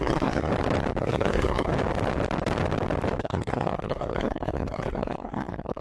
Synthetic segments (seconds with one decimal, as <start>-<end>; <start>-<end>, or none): 0.0-0.5; 1.0-1.7; 3.2-5.8

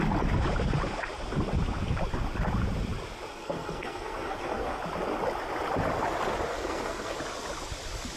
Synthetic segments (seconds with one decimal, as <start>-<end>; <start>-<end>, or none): 3.3-4.8; 6.5-7.2

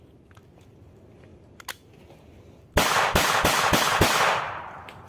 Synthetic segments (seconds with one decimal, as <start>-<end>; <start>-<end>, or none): none

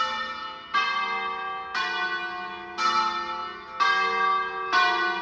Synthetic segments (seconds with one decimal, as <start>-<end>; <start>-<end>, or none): none

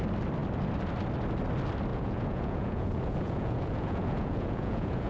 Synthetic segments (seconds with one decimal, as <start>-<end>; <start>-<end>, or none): 1.9-5.1

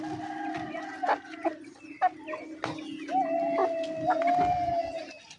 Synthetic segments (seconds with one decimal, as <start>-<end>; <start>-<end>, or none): none